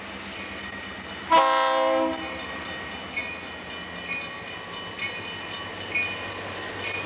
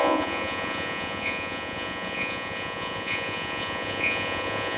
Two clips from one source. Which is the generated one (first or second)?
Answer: second